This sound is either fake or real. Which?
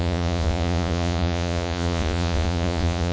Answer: fake